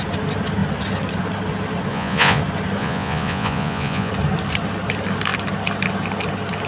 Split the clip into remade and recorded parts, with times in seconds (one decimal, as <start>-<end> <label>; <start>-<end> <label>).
0.0-1.9 recorded; 1.9-2.4 remade; 2.4-2.8 recorded; 2.8-4.1 remade; 4.1-6.7 recorded